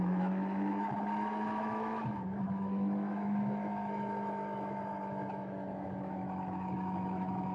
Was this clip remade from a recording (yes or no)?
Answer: yes